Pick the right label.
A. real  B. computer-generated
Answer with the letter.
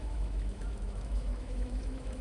B